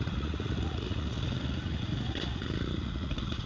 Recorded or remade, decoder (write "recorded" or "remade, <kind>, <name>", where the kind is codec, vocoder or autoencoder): remade, vocoder, Vocos